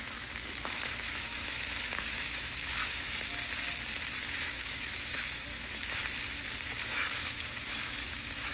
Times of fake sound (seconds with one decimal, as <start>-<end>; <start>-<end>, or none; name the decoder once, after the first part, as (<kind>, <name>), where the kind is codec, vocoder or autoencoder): 0.0-3.3 (autoencoder, DAC-VAE); 4.2-6.0; 6.6-8.5